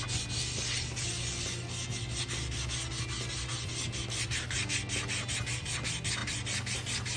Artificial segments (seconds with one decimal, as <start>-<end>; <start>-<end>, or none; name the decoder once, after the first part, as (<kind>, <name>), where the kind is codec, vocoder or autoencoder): none

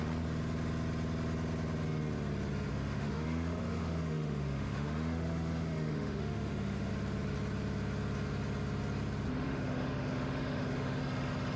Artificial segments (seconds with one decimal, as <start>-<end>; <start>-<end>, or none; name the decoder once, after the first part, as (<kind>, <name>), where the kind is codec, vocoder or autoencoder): 2.7-6.9 (autoencoder, DAC-VAE); 9.3-11.0

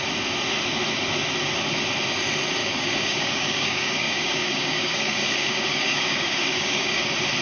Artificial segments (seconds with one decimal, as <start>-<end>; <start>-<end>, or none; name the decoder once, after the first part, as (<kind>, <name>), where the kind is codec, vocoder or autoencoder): 2.6-7.0 (codec, DAC)

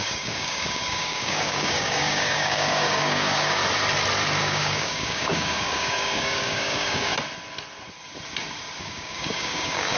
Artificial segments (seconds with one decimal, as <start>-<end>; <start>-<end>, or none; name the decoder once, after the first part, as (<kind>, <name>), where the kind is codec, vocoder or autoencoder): 0.0-3.6 (codec, DAC); 4.4-7.1; 8.8-10.0

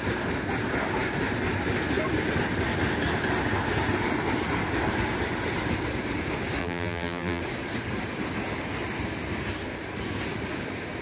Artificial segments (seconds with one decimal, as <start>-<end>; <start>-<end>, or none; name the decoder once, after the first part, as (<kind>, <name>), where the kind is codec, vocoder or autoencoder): 6.6-7.4 (vocoder, BigVGAN v2)

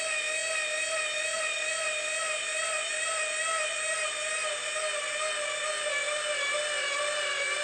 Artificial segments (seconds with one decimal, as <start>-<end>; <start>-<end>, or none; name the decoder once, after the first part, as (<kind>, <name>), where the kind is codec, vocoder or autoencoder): none

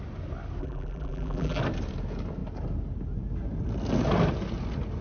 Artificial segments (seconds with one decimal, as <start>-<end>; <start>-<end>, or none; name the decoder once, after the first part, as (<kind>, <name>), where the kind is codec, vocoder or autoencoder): 0.6-1.6 (vocoder, BigVGAN v2)